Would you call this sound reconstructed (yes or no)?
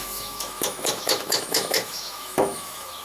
yes